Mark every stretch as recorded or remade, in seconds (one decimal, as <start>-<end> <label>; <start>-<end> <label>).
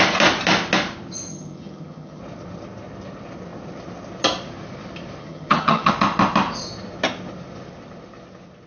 0.0-1.3 recorded; 1.3-2.2 remade; 2.2-5.2 recorded; 5.2-5.9 remade; 5.9-8.7 recorded